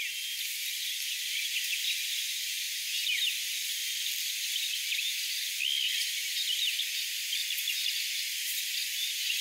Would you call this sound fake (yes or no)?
no